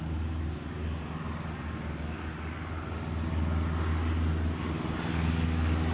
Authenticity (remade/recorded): recorded